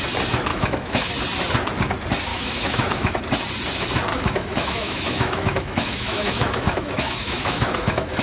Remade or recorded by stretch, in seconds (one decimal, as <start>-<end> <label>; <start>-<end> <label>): 0.0-0.5 recorded; 0.5-1.1 remade; 1.1-2.3 recorded; 2.3-3.2 remade; 3.2-4.1 recorded; 4.1-8.2 remade